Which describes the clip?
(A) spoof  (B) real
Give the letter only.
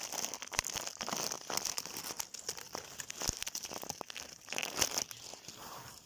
B